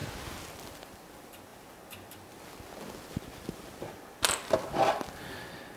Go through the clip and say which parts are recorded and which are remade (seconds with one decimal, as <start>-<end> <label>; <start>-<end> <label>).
0.0-5.8 recorded